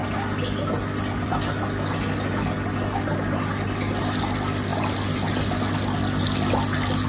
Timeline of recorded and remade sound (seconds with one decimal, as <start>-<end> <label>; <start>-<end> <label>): 0.0-7.1 recorded